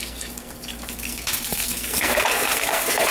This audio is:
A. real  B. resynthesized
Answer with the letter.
B